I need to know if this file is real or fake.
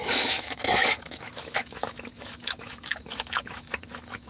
fake